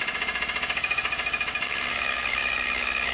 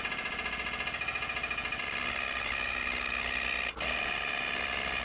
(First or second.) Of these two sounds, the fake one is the first